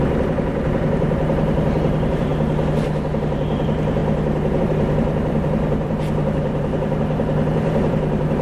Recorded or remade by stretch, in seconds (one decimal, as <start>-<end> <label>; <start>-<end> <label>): 0.0-2.3 remade; 2.3-3.2 recorded; 3.2-4.0 remade; 4.0-4.6 recorded; 4.6-8.4 remade